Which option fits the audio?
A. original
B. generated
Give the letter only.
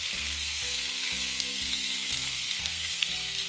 B